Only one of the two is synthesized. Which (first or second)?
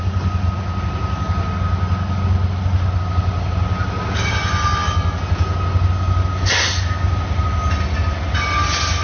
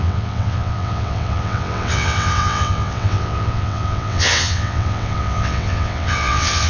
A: second